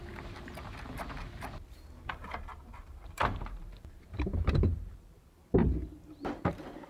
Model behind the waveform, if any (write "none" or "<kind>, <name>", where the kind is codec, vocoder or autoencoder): vocoder, BigVGAN v2